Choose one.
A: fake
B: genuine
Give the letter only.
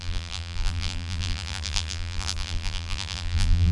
A